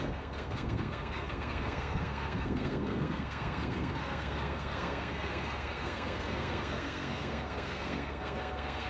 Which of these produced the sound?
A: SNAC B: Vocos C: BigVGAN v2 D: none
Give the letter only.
A